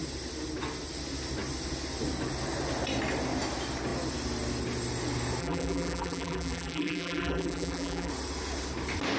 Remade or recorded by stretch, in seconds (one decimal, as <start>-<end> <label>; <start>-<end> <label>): 0.0-5.4 recorded; 5.4-8.1 remade; 8.1-9.2 recorded